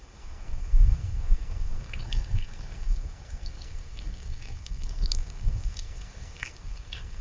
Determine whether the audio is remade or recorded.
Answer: remade